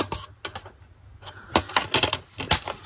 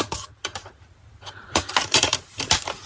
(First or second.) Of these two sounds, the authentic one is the first